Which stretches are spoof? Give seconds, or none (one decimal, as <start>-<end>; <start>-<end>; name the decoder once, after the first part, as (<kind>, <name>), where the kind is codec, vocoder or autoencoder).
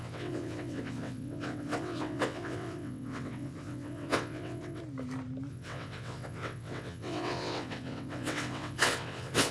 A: 0.0-4.8 (vocoder, WaveNeXt); 5.5-9.5